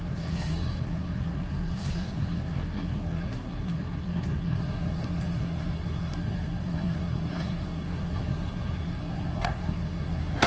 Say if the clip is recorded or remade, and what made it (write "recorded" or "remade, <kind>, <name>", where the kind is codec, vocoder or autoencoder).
remade, codec, SNAC